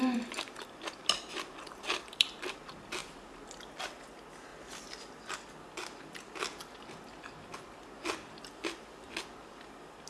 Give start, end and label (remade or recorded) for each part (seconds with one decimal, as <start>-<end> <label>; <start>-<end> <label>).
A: 0.0-3.0 remade; 3.0-3.8 recorded; 3.8-4.5 remade; 4.5-8.4 recorded; 8.4-10.1 remade

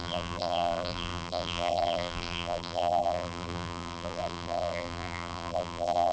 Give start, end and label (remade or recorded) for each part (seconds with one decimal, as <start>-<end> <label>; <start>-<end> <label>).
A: 0.0-6.1 remade

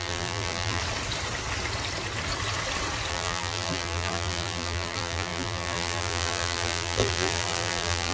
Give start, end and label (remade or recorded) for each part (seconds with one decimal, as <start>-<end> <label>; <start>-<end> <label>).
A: 0.0-0.8 remade; 0.8-3.1 recorded; 3.1-8.1 remade

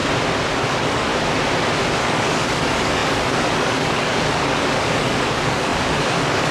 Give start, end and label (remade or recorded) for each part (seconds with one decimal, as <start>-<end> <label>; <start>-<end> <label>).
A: 0.0-0.7 recorded; 0.7-1.1 remade; 1.1-2.0 recorded; 2.0-6.5 remade

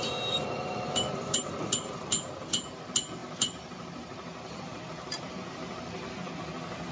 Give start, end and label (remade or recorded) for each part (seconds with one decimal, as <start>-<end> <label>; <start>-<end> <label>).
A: 0.0-0.4 recorded; 0.4-2.0 remade; 2.0-3.2 recorded; 3.2-6.3 remade; 6.3-6.9 recorded

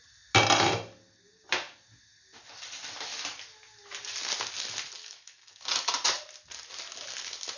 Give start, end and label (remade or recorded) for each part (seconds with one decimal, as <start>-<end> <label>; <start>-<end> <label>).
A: 0.0-5.0 recorded; 5.0-5.6 remade; 5.6-7.6 recorded

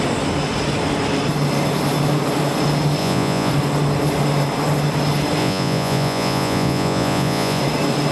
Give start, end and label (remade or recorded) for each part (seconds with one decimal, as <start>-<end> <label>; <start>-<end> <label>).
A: 0.0-3.0 recorded; 3.0-3.5 remade; 3.5-5.4 recorded; 5.4-7.6 remade; 7.6-8.1 recorded

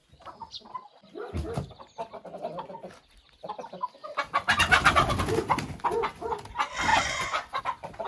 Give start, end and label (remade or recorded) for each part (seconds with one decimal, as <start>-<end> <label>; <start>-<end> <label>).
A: 0.0-6.9 recorded; 6.9-7.6 remade; 7.6-8.1 recorded